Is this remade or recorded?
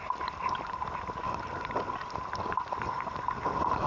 recorded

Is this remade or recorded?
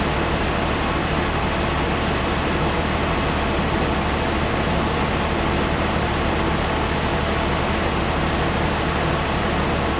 recorded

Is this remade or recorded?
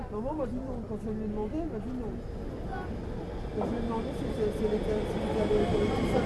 recorded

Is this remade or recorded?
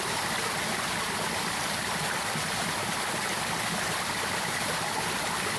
recorded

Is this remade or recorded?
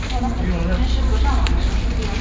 recorded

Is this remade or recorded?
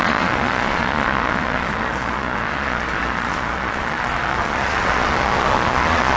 remade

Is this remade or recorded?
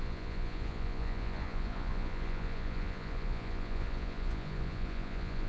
remade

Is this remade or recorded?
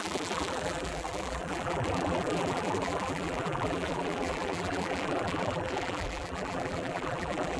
remade